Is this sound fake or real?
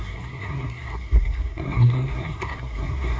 fake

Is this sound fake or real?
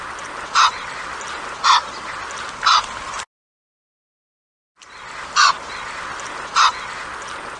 real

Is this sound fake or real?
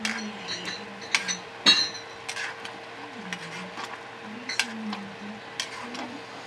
real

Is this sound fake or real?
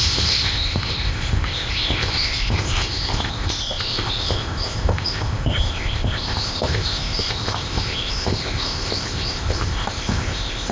fake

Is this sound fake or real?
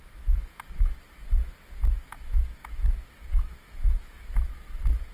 fake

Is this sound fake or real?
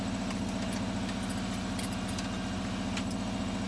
real